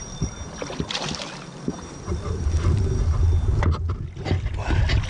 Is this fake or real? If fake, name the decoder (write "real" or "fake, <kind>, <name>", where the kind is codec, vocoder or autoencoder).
real